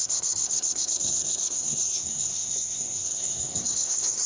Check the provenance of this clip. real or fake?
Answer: fake